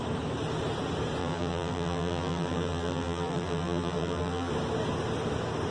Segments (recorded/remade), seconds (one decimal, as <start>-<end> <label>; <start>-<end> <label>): 0.0-1.2 recorded; 1.2-4.5 remade; 4.5-5.7 recorded